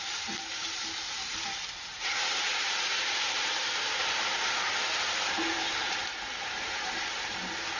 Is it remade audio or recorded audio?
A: remade